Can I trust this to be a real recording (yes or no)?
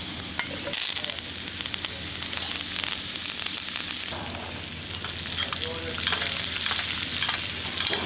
yes